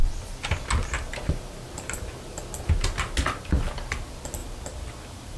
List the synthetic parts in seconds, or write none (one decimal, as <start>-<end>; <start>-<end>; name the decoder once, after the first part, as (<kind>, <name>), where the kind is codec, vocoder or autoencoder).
0.8-2.4 (vocoder, BigVGAN v2); 4.4-5.4